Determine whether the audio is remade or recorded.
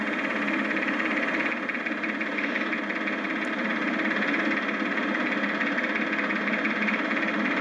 recorded